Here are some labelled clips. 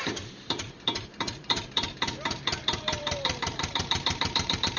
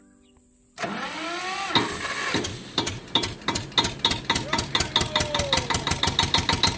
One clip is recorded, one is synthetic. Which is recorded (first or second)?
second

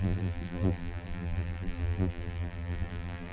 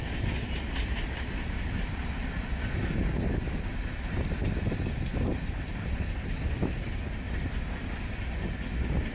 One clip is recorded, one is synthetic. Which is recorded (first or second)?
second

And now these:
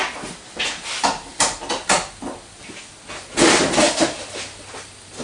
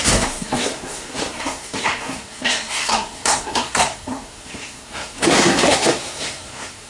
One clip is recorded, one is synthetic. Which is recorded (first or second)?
first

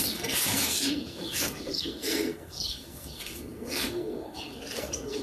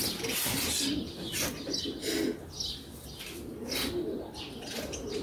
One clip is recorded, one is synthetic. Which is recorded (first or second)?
second